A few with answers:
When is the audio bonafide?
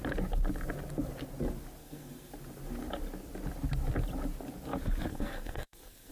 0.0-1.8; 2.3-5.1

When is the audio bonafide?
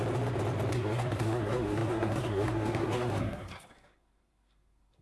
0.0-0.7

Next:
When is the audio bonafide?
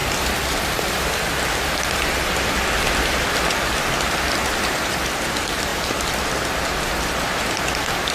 0.0-8.1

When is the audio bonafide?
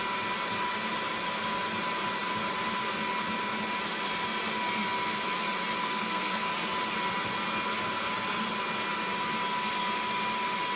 0.0-5.8; 6.5-10.8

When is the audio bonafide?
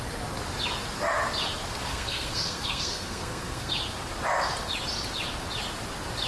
0.0-1.9; 3.7-6.3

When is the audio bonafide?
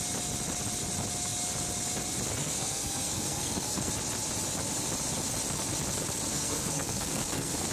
0.0-2.4; 3.9-6.3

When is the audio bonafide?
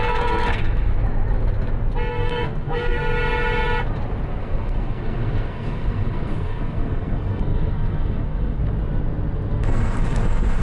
0.9-2.1; 3.0-4.4; 8.6-9.6